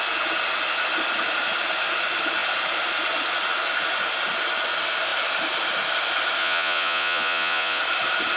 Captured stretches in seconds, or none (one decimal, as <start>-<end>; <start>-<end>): 0.0-6.4; 7.8-8.4